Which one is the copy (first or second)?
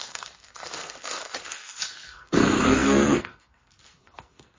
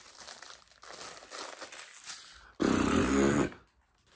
first